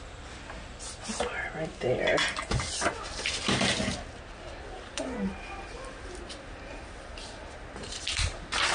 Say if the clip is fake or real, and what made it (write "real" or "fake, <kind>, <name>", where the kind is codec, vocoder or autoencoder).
real